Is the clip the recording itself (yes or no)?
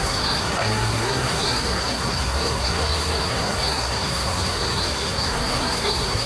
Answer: no